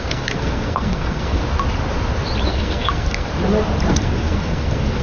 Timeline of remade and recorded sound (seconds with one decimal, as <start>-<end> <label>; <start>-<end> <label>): 0.0-1.4 remade; 1.4-2.5 recorded; 2.5-3.3 remade; 3.3-3.9 recorded; 3.9-5.0 remade

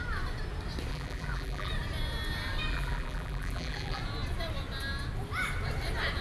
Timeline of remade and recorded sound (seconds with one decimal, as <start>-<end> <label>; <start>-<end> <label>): 0.0-0.9 recorded; 0.9-1.7 remade; 1.7-2.7 recorded; 2.7-4.0 remade; 4.0-6.2 recorded

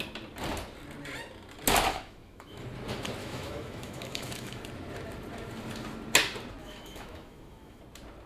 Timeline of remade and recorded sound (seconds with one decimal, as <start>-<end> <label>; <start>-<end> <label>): 0.0-1.9 recorded; 1.9-2.6 remade; 2.6-3.2 recorded; 3.2-4.6 remade; 4.6-6.6 recorded; 6.6-7.8 remade; 7.8-8.3 recorded